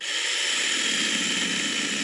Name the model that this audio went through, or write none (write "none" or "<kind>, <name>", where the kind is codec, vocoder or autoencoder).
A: none